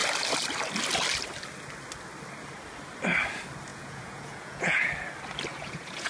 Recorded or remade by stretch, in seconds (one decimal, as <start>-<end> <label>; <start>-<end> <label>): 0.0-3.7 recorded; 3.7-4.9 remade; 4.9-5.5 recorded; 5.5-6.1 remade